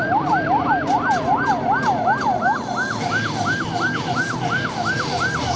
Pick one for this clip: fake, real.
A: real